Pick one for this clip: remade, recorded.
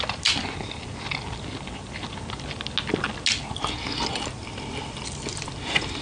recorded